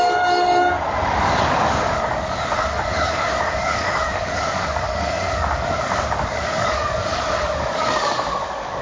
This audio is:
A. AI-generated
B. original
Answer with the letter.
A